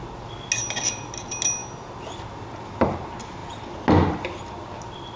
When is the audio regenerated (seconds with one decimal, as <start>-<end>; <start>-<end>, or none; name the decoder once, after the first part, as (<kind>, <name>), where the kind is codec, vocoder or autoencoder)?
none

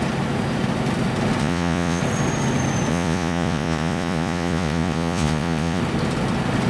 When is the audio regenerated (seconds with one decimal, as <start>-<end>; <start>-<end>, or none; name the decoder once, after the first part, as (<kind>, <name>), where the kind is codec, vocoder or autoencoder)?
1.4-2.0 (vocoder, Vocos); 2.9-5.8